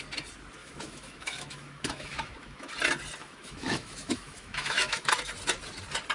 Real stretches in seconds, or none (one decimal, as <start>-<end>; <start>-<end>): 0.0-0.6; 2.7-3.2; 5.1-6.1